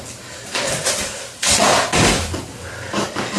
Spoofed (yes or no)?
no